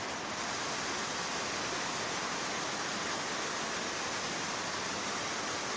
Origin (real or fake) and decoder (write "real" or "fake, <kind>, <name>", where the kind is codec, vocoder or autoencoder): real